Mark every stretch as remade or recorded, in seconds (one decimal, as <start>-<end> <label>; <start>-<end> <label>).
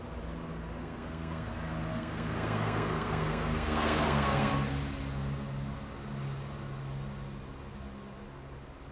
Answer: 0.0-0.8 recorded; 0.8-1.5 remade; 1.5-1.9 recorded; 1.9-4.5 remade; 4.5-8.9 recorded